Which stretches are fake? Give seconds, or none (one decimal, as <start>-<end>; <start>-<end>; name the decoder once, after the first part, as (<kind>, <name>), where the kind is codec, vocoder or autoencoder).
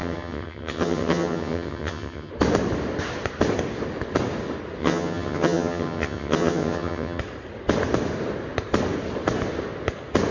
0.0-2.3 (vocoder, HiFi-GAN); 4.8-7.2